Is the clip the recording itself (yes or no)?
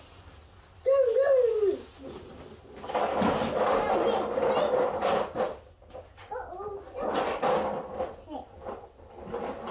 yes